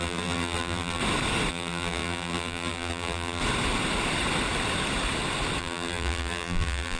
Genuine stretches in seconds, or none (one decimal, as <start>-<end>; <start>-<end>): 1.0-1.5; 3.4-5.6